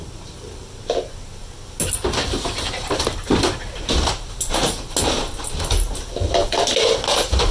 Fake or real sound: real